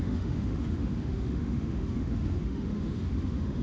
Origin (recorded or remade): remade